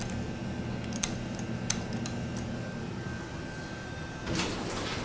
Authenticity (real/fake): real